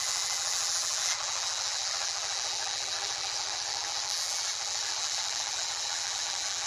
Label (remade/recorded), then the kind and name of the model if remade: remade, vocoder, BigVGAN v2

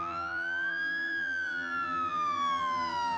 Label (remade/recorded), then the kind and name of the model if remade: remade, vocoder, BigVGAN v2